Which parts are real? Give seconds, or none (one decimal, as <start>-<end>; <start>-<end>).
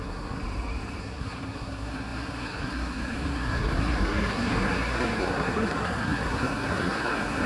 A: 0.4-1.0